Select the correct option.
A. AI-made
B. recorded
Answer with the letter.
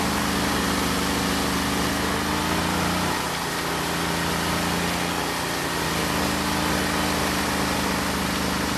B